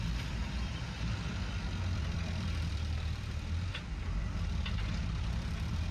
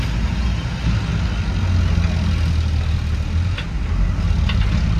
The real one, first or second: second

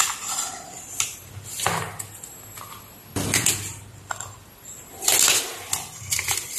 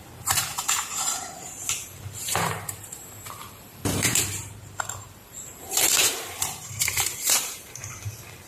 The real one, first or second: first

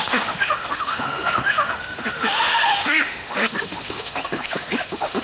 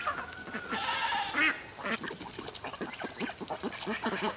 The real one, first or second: second